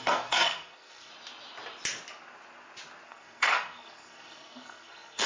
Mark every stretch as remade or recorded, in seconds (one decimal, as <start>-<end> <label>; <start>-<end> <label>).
0.0-1.1 remade; 1.1-3.1 recorded; 3.1-5.3 remade